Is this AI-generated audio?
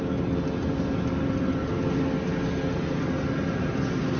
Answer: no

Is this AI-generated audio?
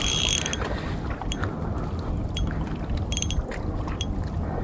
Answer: no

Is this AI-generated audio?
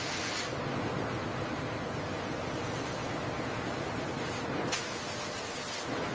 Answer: no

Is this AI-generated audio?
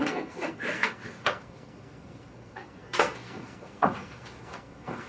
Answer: yes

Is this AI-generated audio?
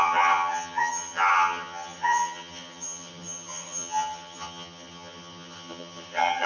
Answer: yes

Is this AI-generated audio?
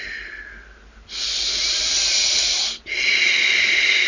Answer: no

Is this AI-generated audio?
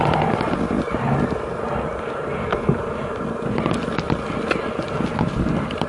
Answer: no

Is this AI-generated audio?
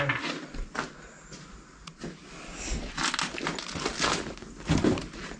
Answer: no